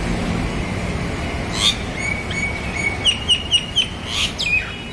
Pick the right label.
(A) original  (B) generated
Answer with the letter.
A